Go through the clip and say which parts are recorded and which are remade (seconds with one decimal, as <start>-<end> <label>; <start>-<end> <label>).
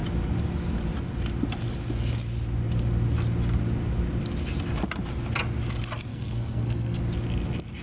0.0-6.1 recorded; 6.1-7.0 remade; 7.0-7.8 recorded